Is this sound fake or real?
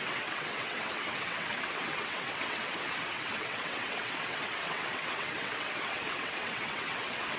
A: fake